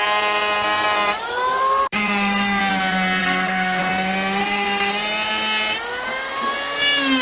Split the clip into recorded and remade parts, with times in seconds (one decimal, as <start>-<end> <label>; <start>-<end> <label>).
0.0-1.5 recorded; 1.5-2.6 remade; 2.6-3.2 recorded; 3.2-3.8 remade; 3.8-4.4 recorded; 4.4-4.9 remade; 4.9-7.2 recorded